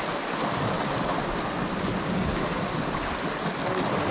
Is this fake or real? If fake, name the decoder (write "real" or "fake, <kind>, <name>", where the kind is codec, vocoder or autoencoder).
real